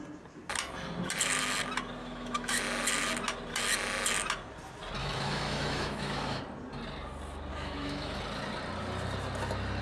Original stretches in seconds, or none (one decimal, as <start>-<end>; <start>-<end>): 0.0-2.0; 2.6-5.0; 6.4-7.5; 8.2-9.8